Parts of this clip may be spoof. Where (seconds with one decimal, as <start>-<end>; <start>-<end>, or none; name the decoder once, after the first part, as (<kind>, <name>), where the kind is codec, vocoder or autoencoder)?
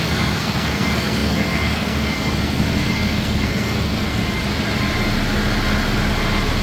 0.0-4.2 (codec, SNAC)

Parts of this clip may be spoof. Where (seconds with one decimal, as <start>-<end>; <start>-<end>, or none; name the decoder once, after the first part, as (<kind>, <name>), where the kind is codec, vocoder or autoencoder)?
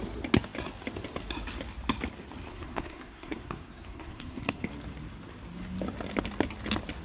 2.5-4.7 (codec, SNAC)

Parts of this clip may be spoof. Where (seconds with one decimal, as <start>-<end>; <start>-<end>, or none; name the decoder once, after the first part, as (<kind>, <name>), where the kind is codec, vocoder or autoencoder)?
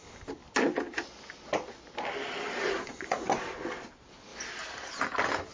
none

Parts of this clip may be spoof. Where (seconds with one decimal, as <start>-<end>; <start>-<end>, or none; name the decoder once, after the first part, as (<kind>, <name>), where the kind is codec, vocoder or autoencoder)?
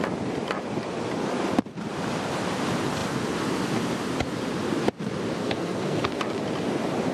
5.4-6.2 (codec, SNAC)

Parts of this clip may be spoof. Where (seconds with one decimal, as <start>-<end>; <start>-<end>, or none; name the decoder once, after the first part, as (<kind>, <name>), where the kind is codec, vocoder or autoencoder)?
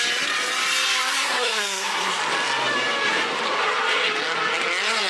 1.1-2.2 (codec, SNAC)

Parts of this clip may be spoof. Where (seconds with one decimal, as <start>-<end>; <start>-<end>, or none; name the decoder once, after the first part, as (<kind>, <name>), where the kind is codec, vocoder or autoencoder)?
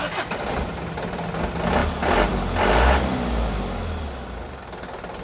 none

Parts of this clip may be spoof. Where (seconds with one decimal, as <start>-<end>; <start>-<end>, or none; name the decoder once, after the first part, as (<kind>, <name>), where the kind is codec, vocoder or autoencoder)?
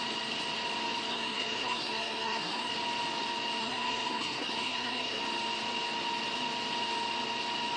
1.1-2.7 (codec, SNAC); 3.6-5.2